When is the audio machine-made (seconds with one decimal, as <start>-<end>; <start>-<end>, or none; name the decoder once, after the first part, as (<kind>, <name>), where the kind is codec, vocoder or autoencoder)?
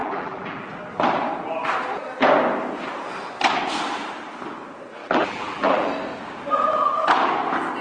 0.0-0.7 (vocoder, BigVGAN v2); 5.0-5.9